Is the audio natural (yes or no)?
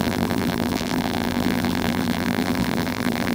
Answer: no